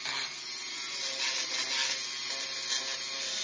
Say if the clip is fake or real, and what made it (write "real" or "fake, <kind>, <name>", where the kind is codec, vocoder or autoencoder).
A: real